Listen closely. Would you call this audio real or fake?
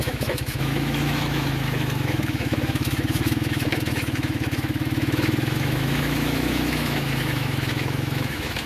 fake